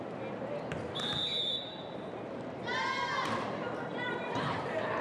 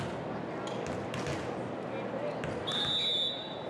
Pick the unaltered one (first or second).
second